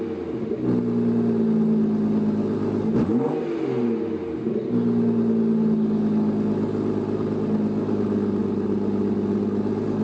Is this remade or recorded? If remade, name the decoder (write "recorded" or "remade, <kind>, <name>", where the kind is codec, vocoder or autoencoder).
recorded